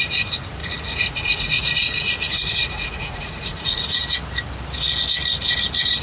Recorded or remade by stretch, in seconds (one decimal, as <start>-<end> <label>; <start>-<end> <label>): 0.0-0.6 recorded; 0.6-4.0 remade; 4.0-6.0 recorded